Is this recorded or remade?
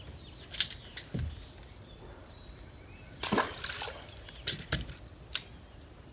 recorded